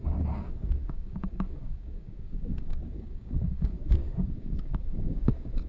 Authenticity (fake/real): fake